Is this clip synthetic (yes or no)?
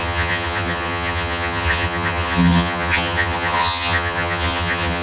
yes